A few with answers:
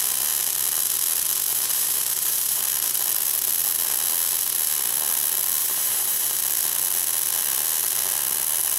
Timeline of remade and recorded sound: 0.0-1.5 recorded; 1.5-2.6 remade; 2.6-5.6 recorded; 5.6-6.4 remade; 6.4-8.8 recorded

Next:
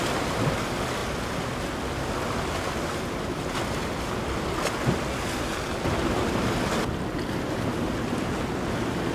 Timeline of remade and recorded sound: 0.0-9.1 recorded